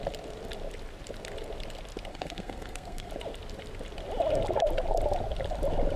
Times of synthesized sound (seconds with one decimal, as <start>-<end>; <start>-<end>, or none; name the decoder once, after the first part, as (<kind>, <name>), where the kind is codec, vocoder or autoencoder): 2.1-3.1 (codec, SNAC)